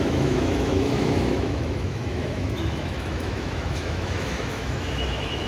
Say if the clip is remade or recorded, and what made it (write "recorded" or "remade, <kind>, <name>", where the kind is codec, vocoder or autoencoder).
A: remade, autoencoder, DAC-VAE